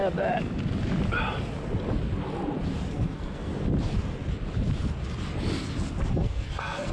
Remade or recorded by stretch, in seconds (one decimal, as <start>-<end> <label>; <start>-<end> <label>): 0.0-2.9 recorded; 2.9-3.5 remade; 3.5-6.1 recorded; 6.1-6.9 remade